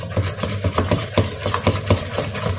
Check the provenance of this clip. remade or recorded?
recorded